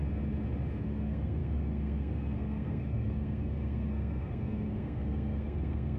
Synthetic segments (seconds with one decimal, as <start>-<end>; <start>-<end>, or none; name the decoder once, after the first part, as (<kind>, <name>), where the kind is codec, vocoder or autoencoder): 0.8-6.0 (codec, SNAC)

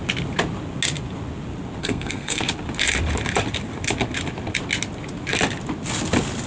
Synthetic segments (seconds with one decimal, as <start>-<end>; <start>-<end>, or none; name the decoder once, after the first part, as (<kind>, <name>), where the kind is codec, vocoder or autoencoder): 1.8-2.4 (codec, SNAC)

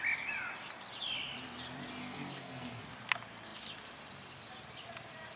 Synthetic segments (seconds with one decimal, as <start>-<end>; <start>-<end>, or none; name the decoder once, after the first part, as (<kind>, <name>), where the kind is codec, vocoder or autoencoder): 2.0-2.8 (codec, SNAC)

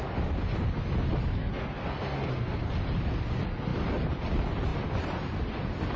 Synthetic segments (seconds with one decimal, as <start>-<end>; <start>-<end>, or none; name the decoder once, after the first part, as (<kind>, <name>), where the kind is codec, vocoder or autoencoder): 1.4-2.7 (codec, SNAC)

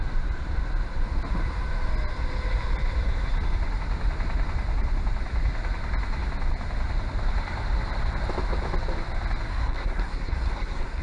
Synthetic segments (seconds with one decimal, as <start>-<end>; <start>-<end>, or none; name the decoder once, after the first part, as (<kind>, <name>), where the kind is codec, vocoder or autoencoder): 9.5-11.0 (codec, SNAC)